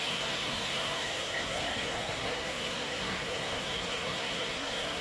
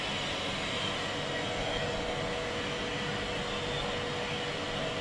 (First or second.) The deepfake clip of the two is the first